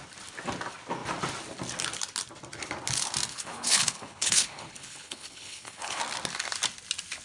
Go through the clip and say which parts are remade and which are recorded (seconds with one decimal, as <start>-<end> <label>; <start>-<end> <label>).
0.0-3.3 recorded; 3.3-6.0 remade; 6.0-7.2 recorded